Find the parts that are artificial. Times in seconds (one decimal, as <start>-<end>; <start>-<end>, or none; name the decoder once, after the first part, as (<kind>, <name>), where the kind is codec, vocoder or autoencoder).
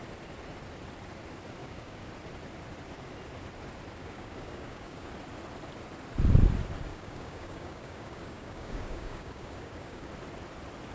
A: 1.6-2.1 (codec, DAC); 4.0-5.1; 6.9-10.1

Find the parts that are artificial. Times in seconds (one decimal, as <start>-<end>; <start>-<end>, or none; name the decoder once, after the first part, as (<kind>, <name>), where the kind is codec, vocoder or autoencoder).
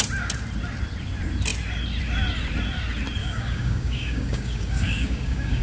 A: 3.2-5.6 (codec, DAC)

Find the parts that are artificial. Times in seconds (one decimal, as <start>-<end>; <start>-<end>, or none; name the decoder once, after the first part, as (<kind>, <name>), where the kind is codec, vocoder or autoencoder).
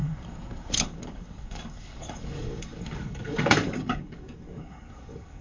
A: 0.0-5.4 (codec, DAC)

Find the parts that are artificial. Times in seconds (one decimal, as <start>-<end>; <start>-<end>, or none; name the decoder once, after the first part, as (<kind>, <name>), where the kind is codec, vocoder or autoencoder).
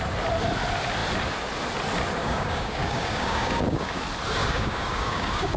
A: 2.2-4.0 (codec, DAC); 4.4-5.6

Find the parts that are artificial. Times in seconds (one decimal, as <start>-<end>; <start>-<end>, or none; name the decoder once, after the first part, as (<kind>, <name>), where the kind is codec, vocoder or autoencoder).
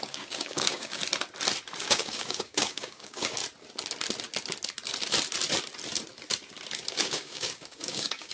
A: 0.0-1.0 (codec, DAC); 1.8-3.4; 6.9-8.3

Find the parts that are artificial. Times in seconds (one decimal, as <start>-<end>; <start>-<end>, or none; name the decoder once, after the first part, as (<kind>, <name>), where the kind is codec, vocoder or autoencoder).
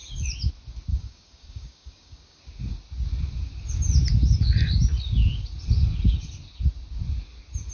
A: 0.9-2.4 (codec, DAC)